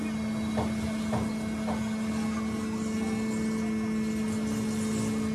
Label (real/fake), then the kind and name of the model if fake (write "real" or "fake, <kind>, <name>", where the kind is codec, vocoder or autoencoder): real